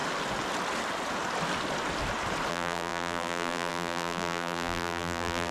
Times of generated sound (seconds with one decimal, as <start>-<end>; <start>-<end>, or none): 2.5-5.5